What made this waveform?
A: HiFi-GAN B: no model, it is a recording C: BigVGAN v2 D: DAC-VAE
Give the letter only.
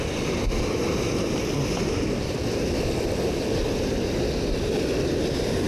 B